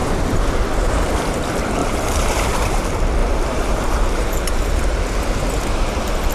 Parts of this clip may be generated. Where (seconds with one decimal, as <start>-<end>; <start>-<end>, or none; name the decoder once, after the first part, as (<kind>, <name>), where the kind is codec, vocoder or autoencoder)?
1.8-2.8 (vocoder, BigVGAN v2); 3.2-4.6